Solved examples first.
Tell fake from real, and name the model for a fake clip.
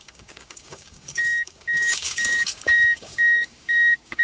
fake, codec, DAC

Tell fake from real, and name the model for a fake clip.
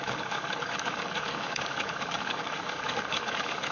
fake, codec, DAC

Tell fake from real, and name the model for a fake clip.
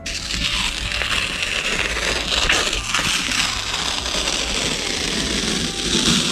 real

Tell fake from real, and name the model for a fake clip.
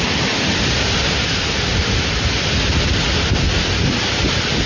real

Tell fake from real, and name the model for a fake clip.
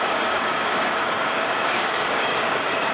fake, codec, DAC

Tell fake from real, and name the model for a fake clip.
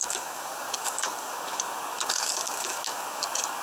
fake, codec, DAC